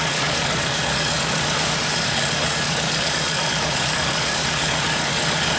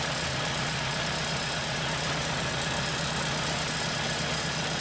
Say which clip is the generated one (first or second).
first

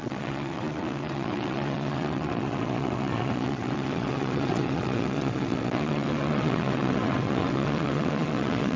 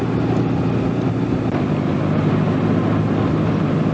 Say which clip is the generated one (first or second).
first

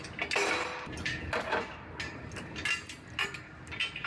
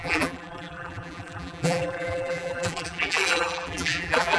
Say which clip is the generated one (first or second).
second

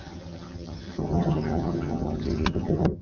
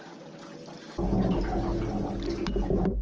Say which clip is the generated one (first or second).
first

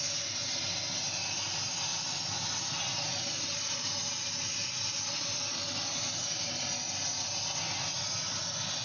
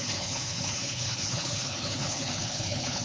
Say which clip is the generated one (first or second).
second